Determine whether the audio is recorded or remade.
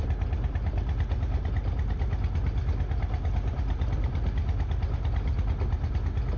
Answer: recorded